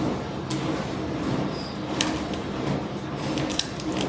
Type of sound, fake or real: real